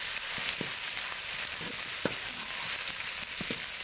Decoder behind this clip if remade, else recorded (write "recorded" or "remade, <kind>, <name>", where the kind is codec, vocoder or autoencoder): recorded